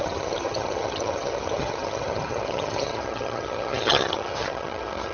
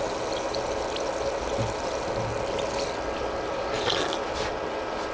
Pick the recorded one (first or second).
second